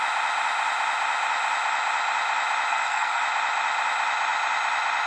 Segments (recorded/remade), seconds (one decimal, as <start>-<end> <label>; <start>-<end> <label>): 0.0-2.7 recorded; 2.7-3.2 remade; 3.2-5.1 recorded